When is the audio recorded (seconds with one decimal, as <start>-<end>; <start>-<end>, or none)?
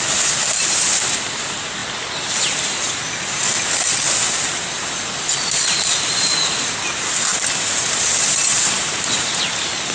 0.0-9.9